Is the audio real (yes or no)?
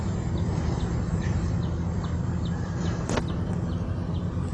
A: yes